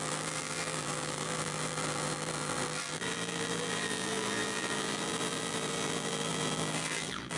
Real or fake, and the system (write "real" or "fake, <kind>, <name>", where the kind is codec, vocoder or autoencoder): fake, vocoder, BigVGAN v2